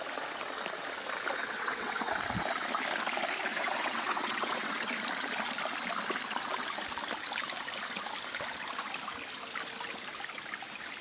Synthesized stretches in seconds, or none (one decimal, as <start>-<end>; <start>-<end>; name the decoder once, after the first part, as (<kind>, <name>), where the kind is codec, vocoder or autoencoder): 1.4-2.2 (vocoder, WaveNeXt); 3.5-4.9